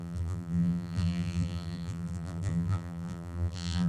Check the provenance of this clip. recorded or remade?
remade